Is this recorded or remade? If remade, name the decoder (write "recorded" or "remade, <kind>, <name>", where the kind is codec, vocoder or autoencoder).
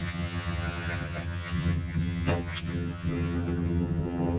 remade, vocoder, HiFi-GAN